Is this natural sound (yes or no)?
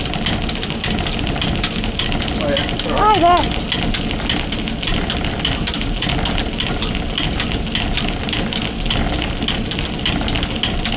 yes